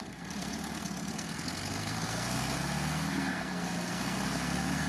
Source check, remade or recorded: remade